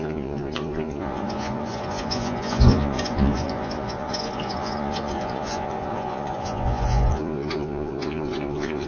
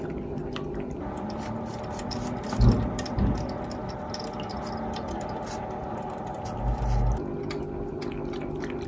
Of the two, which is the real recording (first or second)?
second